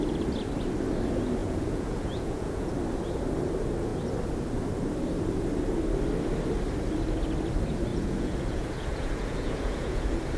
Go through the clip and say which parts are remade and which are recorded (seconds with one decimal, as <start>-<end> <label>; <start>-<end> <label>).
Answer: 0.0-1.4 recorded; 1.4-2.8 remade; 2.8-7.9 recorded; 7.9-10.0 remade; 10.0-10.4 recorded

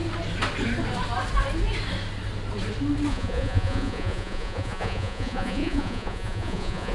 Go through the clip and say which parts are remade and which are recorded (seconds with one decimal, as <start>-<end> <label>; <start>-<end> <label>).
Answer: 0.0-3.1 recorded; 3.1-6.9 remade

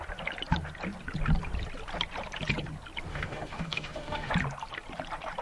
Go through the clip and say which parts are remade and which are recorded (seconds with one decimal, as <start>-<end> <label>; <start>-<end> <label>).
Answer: 0.0-3.1 recorded; 3.1-4.3 remade; 4.3-5.4 recorded

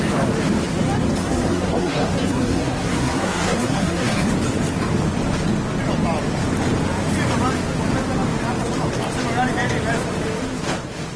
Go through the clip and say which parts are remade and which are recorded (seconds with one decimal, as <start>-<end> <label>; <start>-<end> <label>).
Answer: 0.0-1.2 recorded; 1.2-4.3 remade; 4.3-11.2 recorded

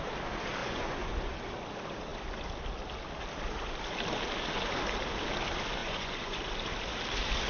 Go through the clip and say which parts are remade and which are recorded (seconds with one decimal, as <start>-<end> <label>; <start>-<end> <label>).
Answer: 0.0-0.6 recorded; 0.6-1.3 remade; 1.3-5.8 recorded; 5.8-6.4 remade; 6.4-7.5 recorded